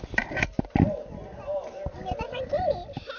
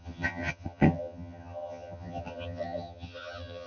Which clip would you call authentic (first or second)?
first